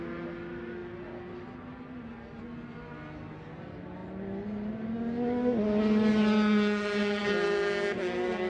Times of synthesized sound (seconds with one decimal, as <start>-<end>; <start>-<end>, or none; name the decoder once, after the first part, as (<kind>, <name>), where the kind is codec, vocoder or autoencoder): none